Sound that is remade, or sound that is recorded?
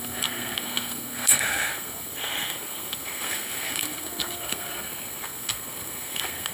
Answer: remade